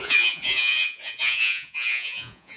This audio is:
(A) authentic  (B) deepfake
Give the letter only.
B